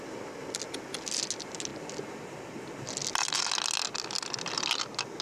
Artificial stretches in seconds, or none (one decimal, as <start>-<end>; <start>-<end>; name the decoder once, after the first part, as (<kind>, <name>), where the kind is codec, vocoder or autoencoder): none